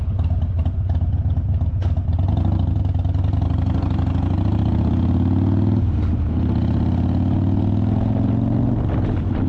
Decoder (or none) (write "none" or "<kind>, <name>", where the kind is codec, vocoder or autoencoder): none